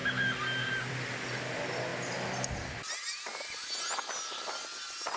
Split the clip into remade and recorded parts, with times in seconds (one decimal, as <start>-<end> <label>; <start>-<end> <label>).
0.0-5.2 recorded